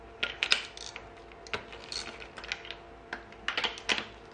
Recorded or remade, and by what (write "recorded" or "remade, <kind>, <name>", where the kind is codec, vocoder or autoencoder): recorded